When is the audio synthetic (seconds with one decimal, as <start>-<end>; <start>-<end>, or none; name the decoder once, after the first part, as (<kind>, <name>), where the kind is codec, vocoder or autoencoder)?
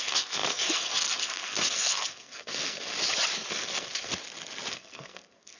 0.0-2.9 (codec, SNAC); 3.5-4.1; 4.7-5.6